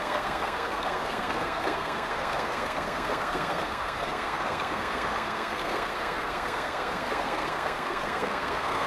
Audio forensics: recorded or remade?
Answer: remade